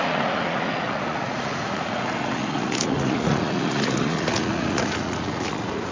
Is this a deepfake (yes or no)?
yes